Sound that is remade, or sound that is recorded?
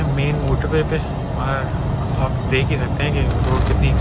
recorded